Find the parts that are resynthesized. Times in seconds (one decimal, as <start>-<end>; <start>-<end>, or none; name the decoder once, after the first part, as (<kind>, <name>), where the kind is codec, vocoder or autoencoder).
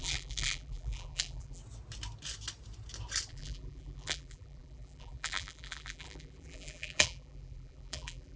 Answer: 0.0-1.6 (vocoder, BigVGAN v2); 3.3-8.4